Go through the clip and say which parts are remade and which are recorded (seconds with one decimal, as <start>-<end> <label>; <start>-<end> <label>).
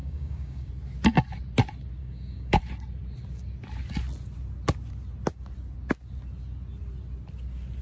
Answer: 0.0-0.7 remade; 0.7-2.0 recorded; 2.0-2.6 remade; 2.6-7.8 recorded